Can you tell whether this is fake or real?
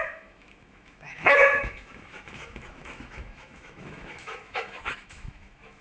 fake